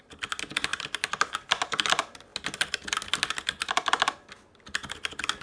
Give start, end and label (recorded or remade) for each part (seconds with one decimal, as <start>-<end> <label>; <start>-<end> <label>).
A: 0.0-0.7 recorded; 0.7-1.9 remade; 1.9-5.4 recorded